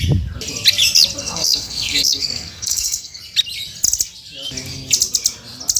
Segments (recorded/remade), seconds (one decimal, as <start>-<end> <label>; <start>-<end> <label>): 0.0-1.2 recorded; 1.2-3.2 remade; 3.2-5.8 recorded

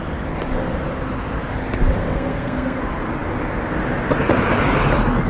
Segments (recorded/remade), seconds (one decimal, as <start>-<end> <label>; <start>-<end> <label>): 0.0-2.0 recorded; 2.0-2.8 remade; 2.8-5.3 recorded